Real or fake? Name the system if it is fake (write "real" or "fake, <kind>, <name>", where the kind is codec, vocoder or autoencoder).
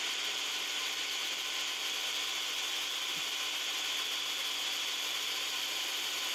fake, vocoder, BigVGAN v2